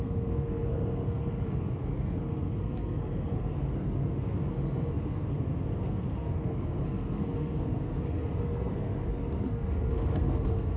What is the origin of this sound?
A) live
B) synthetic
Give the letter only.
B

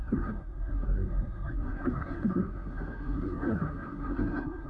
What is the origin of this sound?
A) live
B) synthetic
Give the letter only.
B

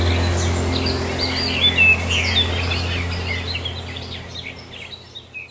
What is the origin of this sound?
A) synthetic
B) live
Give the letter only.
B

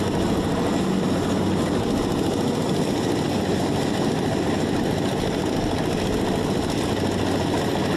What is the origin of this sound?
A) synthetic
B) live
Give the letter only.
B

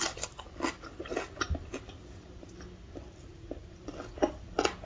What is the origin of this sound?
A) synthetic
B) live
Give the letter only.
B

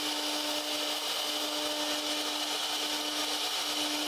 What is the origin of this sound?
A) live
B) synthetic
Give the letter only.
A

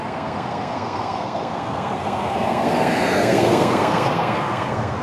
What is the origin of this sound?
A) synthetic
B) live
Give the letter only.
A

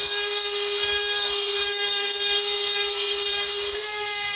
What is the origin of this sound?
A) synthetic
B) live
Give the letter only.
A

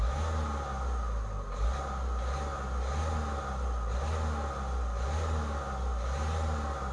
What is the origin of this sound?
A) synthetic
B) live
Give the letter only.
B